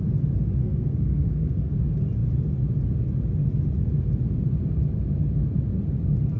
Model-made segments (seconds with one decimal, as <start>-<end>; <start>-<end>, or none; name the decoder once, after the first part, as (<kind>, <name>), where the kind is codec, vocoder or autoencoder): 0.6-1.7 (codec, SNAC)

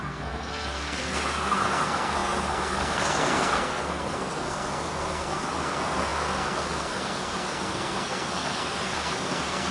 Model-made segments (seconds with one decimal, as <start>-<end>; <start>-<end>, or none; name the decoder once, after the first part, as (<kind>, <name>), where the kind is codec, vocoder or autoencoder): 0.0-9.7 (codec, SNAC)

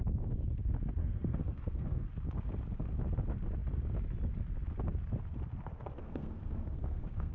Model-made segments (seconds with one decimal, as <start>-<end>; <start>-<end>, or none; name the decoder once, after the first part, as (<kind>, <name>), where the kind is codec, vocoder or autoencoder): 1.0-2.1 (codec, SNAC); 6.0-7.3

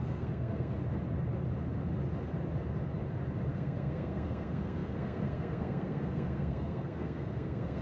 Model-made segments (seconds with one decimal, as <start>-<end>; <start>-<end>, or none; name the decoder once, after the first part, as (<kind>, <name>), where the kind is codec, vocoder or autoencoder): 0.0-0.7 (codec, SNAC); 3.5-7.8

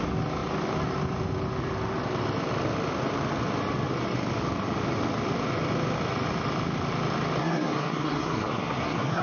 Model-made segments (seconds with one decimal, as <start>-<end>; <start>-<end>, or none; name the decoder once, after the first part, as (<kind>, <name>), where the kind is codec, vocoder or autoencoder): 7.4-9.2 (codec, SNAC)